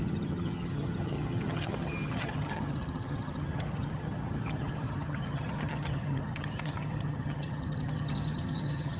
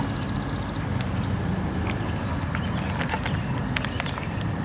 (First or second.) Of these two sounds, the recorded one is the second